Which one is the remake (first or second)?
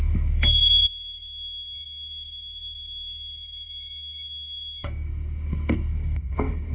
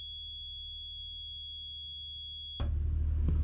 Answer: first